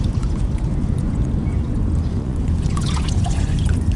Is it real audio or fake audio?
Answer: fake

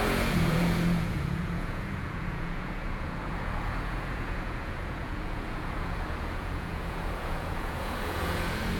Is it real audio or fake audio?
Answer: fake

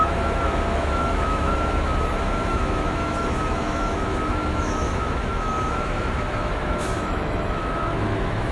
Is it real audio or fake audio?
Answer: fake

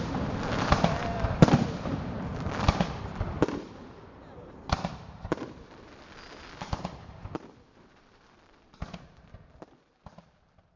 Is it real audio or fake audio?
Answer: fake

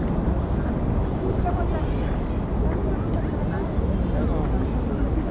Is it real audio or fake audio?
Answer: real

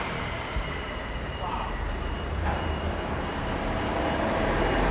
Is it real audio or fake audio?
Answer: fake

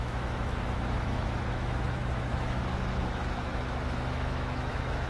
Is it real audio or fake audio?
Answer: fake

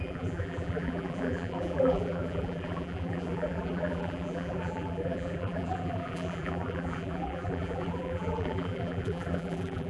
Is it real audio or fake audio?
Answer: fake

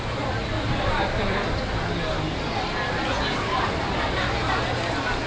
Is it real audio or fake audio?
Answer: real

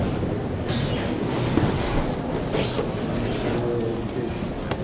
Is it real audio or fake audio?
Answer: real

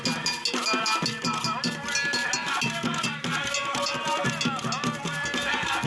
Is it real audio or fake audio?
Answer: real